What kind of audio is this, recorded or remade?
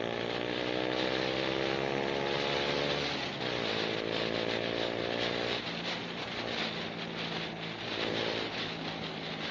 recorded